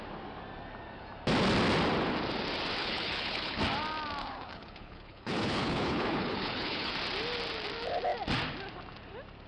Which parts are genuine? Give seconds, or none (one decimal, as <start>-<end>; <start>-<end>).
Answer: 0.0-2.8; 3.6-4.2; 6.9-9.5